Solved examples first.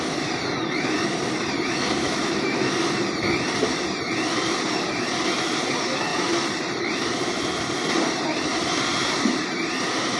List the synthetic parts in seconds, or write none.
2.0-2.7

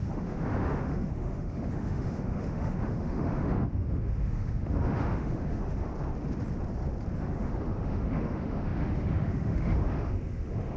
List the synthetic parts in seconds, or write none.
0.0-5.9; 7.2-10.8